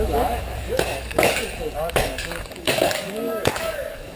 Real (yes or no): no